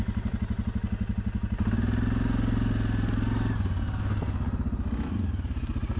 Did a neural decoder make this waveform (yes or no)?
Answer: no